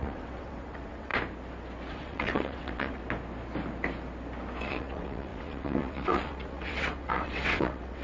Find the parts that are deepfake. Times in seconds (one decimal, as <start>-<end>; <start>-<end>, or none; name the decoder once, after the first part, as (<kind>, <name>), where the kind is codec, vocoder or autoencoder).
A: 0.0-1.1 (vocoder, WaveNeXt); 1.9-3.0; 4.6-8.0

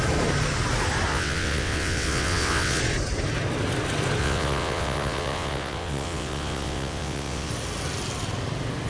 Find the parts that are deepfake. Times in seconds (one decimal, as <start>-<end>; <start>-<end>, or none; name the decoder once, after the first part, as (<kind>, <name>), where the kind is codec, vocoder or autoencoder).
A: 1.1-2.8 (vocoder, WaveNeXt); 4.2-7.5

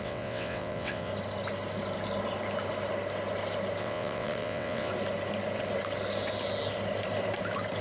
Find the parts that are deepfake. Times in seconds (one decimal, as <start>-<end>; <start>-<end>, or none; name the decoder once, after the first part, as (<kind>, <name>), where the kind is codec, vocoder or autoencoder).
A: 0.0-1.1 (vocoder, WaveNeXt); 3.8-4.9

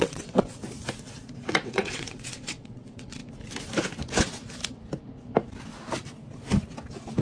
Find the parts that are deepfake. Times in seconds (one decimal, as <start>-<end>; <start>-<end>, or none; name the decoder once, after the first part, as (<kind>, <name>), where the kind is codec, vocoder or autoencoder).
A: 0.0-0.6 (vocoder, WaveNeXt); 1.5-3.2

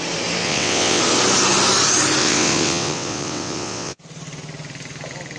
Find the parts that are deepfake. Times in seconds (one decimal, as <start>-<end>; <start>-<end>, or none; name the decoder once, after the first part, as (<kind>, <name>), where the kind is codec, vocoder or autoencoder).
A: 0.4-1.0 (vocoder, WaveNeXt); 2.2-4.0